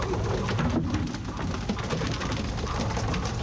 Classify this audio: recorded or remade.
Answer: recorded